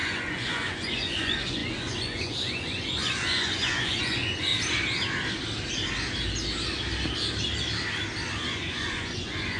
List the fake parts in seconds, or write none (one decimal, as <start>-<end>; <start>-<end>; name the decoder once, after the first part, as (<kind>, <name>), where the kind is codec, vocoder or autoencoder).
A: 0.0-4.5 (vocoder, Vocos); 8.5-9.6